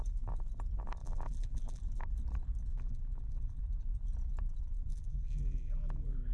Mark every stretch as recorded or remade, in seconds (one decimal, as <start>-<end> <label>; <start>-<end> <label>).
0.0-1.0 recorded; 1.0-1.8 remade; 1.8-2.7 recorded; 2.7-3.6 remade; 3.6-4.9 recorded; 4.9-6.3 remade